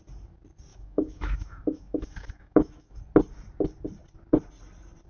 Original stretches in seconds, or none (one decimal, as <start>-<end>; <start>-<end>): 0.0-0.7; 3.0-5.1